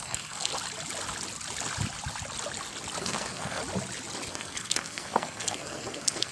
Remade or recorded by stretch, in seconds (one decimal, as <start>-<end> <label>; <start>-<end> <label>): 0.0-0.5 remade; 0.5-3.0 recorded; 3.0-3.6 remade; 3.6-4.3 recorded; 4.3-6.3 remade